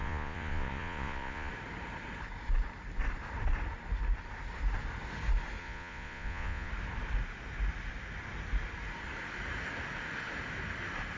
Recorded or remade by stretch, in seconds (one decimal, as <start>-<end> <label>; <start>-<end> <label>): 0.0-1.5 remade; 1.5-5.6 recorded; 5.6-6.7 remade; 6.7-11.2 recorded